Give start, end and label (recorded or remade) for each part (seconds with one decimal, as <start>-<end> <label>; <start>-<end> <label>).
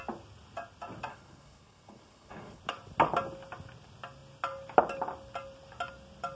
0.0-1.1 recorded; 1.1-2.6 remade; 2.6-6.4 recorded